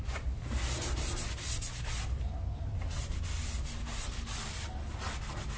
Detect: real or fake real